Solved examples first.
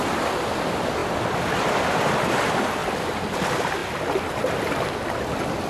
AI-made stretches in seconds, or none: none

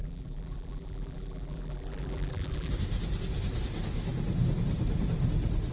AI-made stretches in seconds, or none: 0.0-2.7 (vocoder, BigVGAN v2)

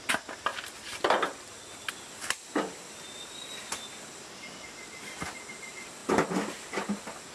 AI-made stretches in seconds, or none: none

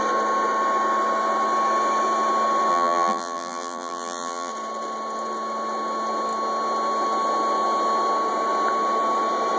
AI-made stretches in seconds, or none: 2.7-4.5 (vocoder, BigVGAN v2)

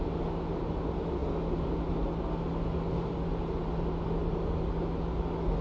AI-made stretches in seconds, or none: none

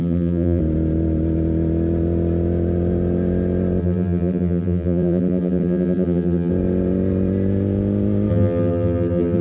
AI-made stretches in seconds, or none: 0.0-0.6 (vocoder, BigVGAN v2); 3.8-6.5; 8.3-9.4